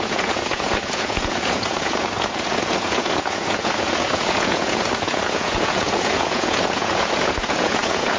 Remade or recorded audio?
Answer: remade